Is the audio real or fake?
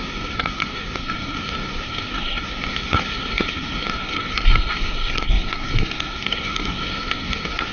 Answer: fake